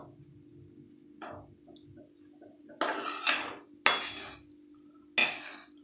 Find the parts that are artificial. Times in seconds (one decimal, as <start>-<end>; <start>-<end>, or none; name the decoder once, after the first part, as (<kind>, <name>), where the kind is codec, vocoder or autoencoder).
none